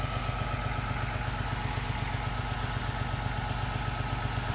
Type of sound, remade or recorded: recorded